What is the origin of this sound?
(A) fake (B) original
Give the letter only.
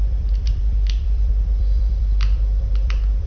A